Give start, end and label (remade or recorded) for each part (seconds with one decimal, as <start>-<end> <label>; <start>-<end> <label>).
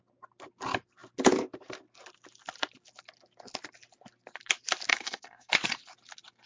0.0-4.9 recorded; 4.9-5.5 remade; 5.5-6.5 recorded